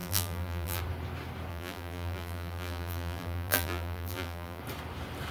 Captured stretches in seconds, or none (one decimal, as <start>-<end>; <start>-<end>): 0.8-1.5; 4.6-5.3